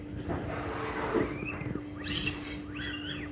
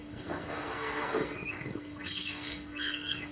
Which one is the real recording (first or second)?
first